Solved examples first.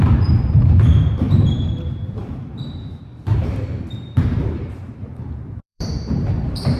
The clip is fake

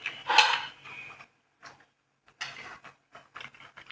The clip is real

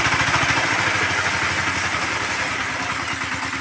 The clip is real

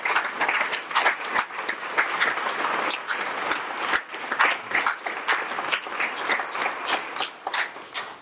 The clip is real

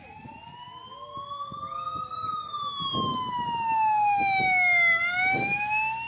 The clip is real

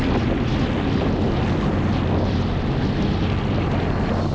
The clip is real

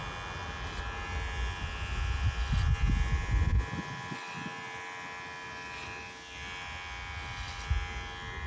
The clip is real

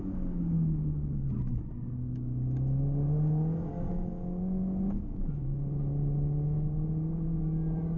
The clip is real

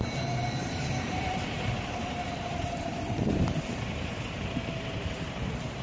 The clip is fake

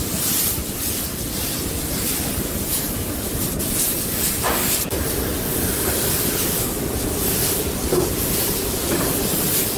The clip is real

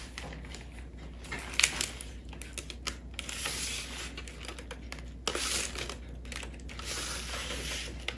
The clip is real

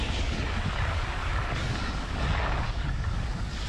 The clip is fake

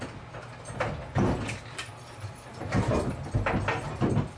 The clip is real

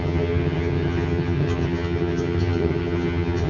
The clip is fake